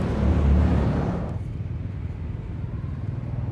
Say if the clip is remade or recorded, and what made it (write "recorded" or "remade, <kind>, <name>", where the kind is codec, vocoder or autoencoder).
remade, vocoder, BigVGAN v2